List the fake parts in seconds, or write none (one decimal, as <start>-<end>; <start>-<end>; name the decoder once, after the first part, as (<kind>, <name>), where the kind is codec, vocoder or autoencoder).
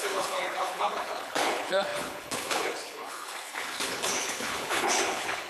0.0-5.5 (codec, HILCodec)